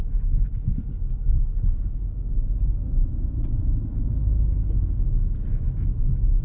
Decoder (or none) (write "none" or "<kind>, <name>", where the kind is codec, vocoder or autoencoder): none